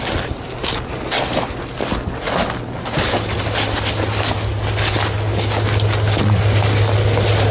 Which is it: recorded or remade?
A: recorded